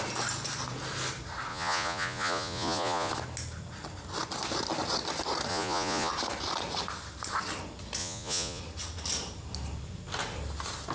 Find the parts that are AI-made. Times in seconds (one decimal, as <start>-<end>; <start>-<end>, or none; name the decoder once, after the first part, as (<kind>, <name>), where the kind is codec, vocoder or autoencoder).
1.5-3.1 (vocoder, Vocos); 5.5-6.1; 8.0-8.6